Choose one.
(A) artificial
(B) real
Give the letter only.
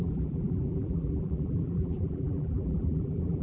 A